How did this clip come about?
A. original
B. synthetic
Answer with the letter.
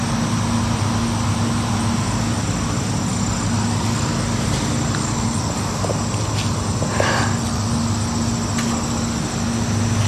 A